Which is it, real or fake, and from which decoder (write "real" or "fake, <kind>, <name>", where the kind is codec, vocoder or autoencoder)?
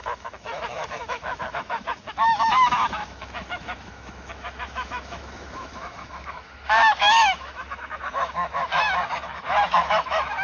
fake, autoencoder, DAC-VAE